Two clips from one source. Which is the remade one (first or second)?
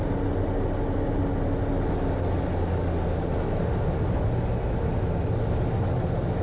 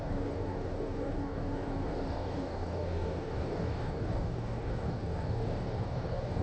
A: second